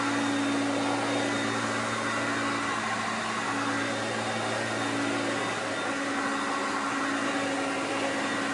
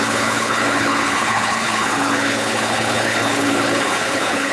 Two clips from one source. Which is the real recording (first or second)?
first